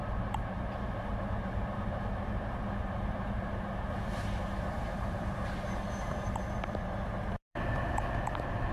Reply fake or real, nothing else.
fake